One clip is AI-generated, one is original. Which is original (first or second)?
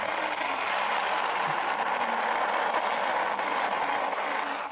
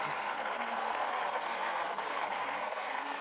first